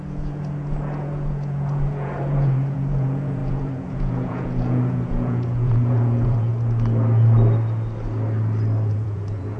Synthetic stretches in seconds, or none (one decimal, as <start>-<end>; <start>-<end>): 0.0-6.5; 8.9-9.6